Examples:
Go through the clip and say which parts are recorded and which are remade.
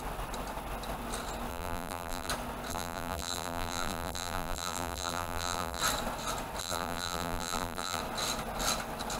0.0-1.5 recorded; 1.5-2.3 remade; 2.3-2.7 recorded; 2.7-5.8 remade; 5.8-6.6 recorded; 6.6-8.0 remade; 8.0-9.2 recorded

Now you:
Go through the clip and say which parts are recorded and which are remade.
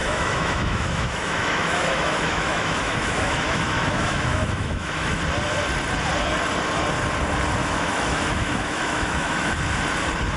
0.0-5.2 remade; 5.2-7.6 recorded; 7.6-9.5 remade; 9.5-10.4 recorded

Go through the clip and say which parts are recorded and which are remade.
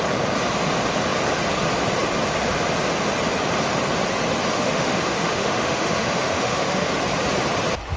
0.0-4.5 recorded; 4.5-6.9 remade; 6.9-8.0 recorded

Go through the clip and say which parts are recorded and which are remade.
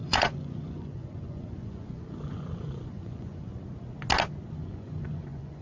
0.0-3.5 remade; 3.5-4.5 recorded; 4.5-5.6 remade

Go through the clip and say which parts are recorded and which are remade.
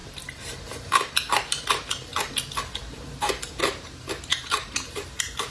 0.0-2.1 remade; 2.1-2.8 recorded; 2.8-5.5 remade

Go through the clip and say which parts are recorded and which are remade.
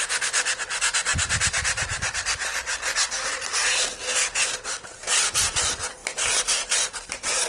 0.0-7.5 recorded